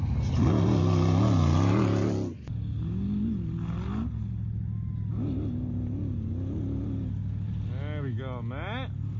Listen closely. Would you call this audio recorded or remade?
recorded